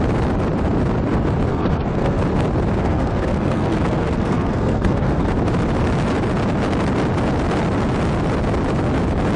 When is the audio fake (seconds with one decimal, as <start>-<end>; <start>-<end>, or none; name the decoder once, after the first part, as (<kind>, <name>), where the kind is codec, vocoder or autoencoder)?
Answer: 1.5-2.2 (codec, SNAC); 2.8-5.3